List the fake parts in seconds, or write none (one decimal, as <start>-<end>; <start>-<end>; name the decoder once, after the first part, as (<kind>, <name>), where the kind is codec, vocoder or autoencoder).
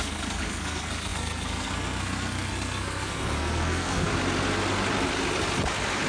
0.0-4.1 (codec, SNAC)